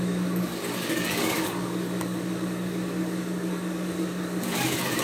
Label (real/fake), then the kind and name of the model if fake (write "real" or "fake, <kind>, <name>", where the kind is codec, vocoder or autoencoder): fake, codec, DAC